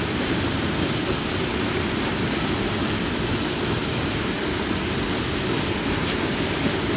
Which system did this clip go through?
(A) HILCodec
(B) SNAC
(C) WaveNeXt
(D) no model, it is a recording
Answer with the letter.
D